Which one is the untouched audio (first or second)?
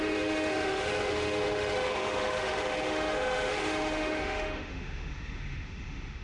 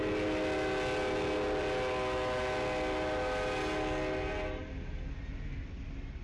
second